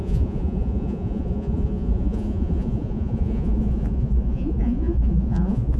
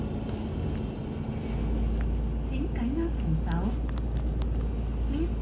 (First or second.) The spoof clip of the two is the first